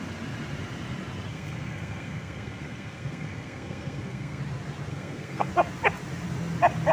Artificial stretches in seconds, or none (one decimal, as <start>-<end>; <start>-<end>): 1.3-4.4; 4.9-5.5

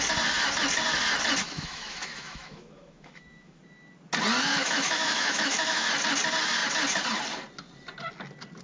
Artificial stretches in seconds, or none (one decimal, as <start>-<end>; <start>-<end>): 1.4-3.6; 4.5-5.9

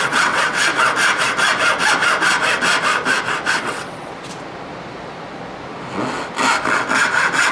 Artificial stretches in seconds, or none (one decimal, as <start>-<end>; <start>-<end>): 0.0-0.7; 3.5-4.1

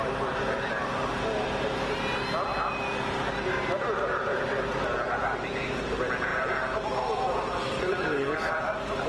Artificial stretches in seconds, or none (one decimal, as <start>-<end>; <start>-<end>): none

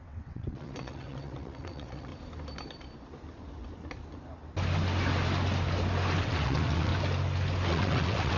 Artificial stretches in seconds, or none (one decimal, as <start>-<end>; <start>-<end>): 0.0-2.1; 6.2-6.9; 7.7-8.4

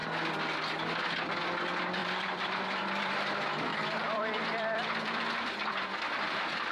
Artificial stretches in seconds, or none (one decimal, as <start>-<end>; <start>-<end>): 2.0-3.1; 3.7-5.6

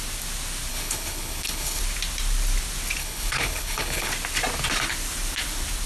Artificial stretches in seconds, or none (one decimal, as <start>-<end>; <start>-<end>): 0.7-1.8; 3.0-4.1